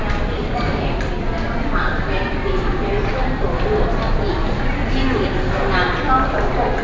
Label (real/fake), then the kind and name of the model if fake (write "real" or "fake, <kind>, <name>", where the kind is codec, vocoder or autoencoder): real